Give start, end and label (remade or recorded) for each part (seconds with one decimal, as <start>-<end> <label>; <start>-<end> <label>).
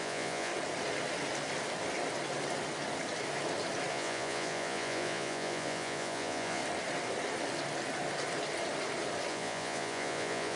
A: 0.0-0.5 remade; 0.5-3.9 recorded; 3.9-6.6 remade; 6.6-9.3 recorded; 9.3-10.6 remade